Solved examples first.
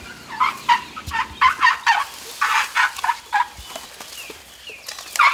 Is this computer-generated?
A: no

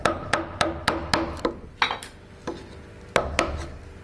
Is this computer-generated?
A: no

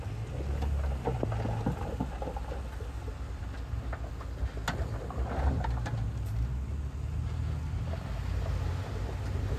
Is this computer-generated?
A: no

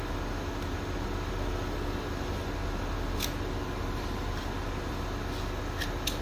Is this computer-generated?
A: no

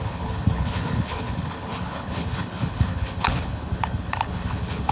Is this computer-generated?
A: yes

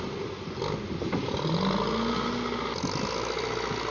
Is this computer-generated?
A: no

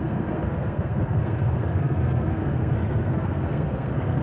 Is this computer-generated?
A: yes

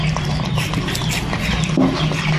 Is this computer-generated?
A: no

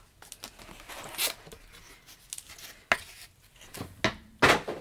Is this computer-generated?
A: no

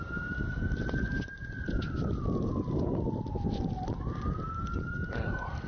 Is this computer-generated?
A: no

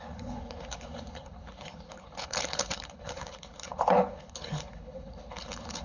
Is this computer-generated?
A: yes